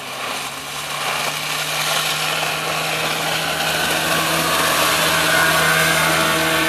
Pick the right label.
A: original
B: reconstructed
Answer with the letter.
A